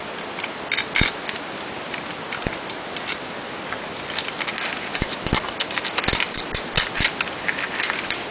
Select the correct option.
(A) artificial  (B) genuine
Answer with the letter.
B